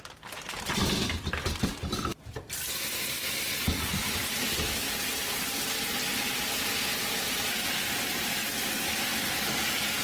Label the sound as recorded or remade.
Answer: remade